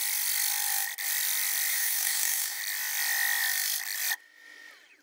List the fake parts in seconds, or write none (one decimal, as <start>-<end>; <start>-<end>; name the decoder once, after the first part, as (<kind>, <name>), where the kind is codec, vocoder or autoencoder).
1.7-2.6 (codec, DAC)